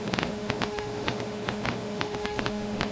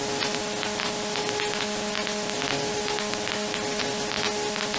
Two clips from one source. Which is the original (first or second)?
second